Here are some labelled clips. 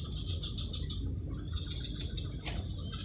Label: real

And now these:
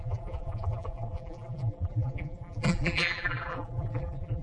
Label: fake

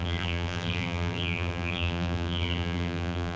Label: fake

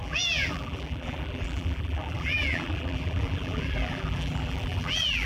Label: fake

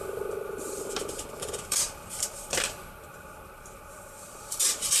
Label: fake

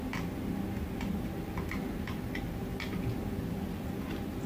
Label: real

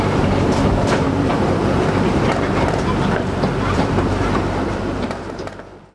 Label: fake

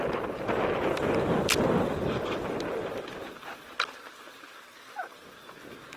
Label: real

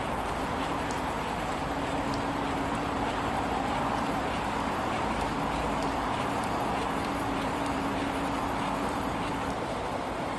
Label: fake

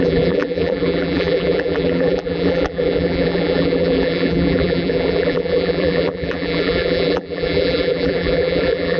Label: fake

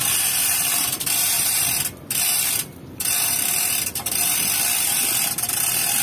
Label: fake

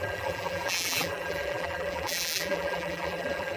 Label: fake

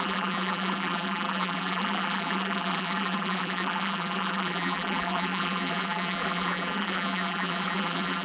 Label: fake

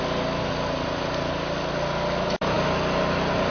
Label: real